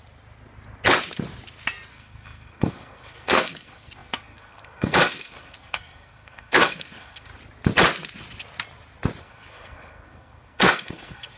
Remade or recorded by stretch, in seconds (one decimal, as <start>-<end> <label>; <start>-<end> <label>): 0.0-1.9 recorded; 1.9-7.3 remade; 7.3-9.2 recorded; 9.2-11.4 remade